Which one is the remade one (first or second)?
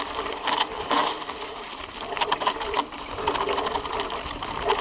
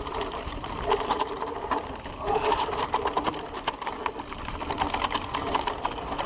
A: second